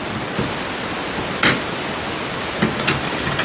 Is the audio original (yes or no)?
yes